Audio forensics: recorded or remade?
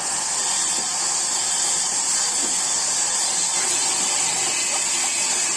recorded